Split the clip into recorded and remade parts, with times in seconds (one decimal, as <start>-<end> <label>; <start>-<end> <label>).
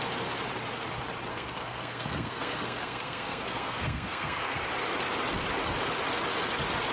0.0-1.3 recorded; 1.3-4.6 remade; 4.6-6.9 recorded